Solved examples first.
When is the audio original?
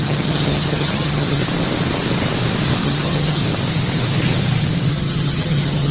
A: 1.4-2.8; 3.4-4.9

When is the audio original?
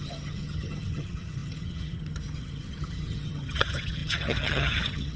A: none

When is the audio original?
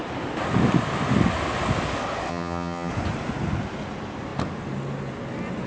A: 0.0-2.3; 2.9-5.7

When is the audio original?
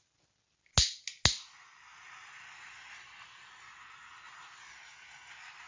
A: 0.0-5.7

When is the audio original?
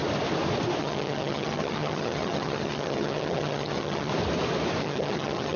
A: 0.0-0.8; 4.1-4.8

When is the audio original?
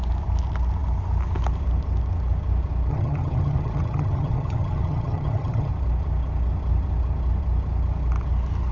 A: 0.0-2.9; 5.7-8.7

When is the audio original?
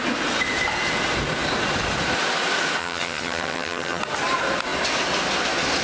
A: 0.0-2.8; 4.0-5.8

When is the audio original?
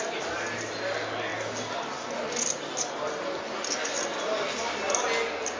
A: 0.0-5.6